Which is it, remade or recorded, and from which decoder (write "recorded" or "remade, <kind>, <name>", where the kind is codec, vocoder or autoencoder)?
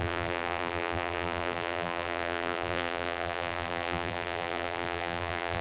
remade, vocoder, BigVGAN v2